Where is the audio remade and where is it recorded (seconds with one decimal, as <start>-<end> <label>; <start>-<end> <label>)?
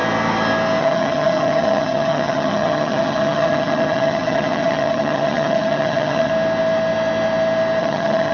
0.0-0.8 recorded; 0.8-6.3 remade; 6.3-7.8 recorded; 7.8-8.3 remade